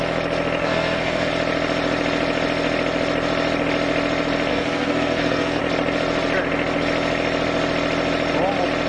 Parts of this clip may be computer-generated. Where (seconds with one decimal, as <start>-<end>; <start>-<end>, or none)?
0.6-1.3; 4.5-5.6